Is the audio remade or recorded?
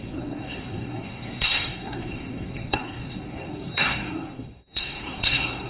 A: remade